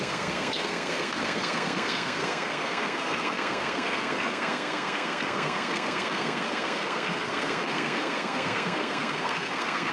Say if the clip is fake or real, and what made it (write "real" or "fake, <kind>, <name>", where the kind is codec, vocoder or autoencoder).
fake, codec, SNAC